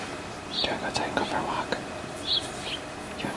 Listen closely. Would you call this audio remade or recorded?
recorded